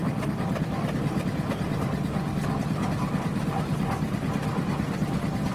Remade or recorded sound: recorded